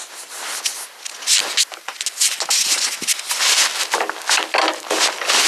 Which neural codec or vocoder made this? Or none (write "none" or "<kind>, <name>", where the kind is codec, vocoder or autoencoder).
none